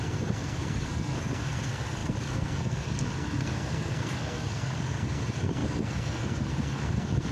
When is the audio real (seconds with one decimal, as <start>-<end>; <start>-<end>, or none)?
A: none